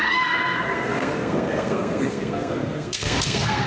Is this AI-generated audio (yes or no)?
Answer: yes